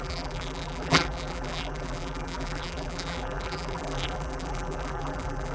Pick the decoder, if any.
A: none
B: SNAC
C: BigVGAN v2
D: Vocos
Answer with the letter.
C